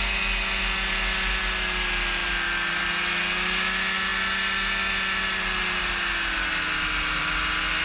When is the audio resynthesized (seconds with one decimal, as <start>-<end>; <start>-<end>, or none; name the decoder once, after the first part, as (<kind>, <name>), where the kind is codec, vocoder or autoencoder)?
none